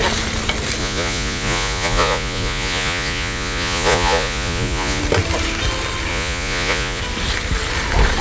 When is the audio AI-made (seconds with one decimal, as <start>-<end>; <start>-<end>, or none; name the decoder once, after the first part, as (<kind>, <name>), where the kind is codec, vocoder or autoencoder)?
0.8-5.0 (vocoder, Vocos); 6.1-7.0

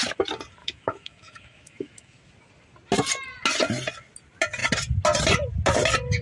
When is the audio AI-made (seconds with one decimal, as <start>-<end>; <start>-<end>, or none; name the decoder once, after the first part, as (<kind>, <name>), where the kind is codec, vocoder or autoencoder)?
0.6-2.3 (autoencoder, DAC-VAE)